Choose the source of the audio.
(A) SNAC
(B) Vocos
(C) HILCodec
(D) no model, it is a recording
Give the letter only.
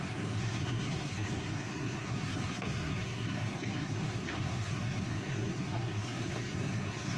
A